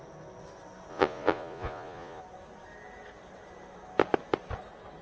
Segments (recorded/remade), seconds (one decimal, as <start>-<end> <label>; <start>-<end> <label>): 0.0-0.9 recorded; 0.9-2.2 remade; 2.2-5.0 recorded